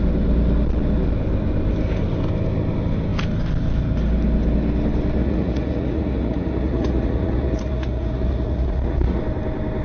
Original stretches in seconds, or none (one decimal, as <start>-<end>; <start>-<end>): 0.0-5.2; 9.2-9.8

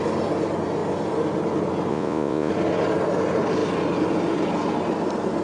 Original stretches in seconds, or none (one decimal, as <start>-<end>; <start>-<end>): 0.0-1.9; 2.5-5.4

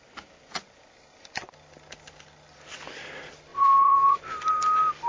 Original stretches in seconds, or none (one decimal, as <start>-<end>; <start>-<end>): 0.0-3.5; 4.2-5.1

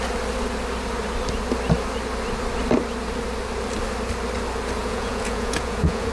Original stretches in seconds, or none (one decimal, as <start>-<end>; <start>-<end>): 0.0-4.8

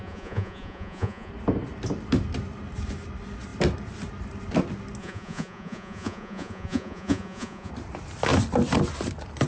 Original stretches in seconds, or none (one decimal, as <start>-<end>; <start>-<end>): 1.3-5.0; 7.7-9.5

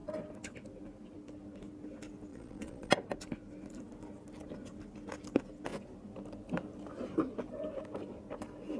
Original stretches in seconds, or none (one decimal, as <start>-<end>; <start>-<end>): 0.0-2.3; 2.9-8.8

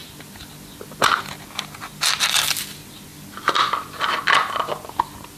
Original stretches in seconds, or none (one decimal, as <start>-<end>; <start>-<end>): 0.0-5.4